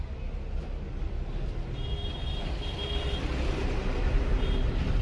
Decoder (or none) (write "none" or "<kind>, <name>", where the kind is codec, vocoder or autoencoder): none